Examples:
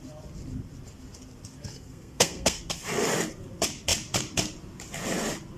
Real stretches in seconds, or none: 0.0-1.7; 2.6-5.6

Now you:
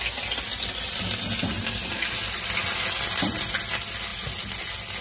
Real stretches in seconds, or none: 0.0-5.0

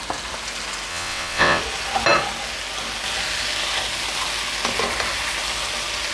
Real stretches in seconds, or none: 0.0-0.9; 1.6-6.1

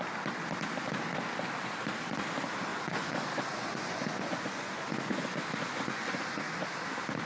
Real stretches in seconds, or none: 0.0-2.7; 6.4-7.3

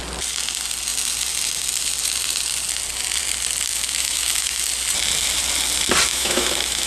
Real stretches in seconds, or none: 0.0-3.7; 4.6-6.1

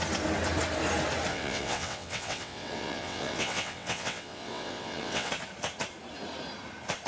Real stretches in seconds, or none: 0.0-1.3; 5.3-7.1